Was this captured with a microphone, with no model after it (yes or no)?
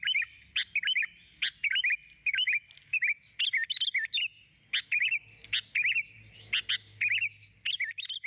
yes